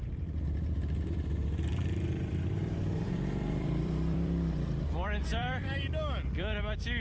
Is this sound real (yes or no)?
no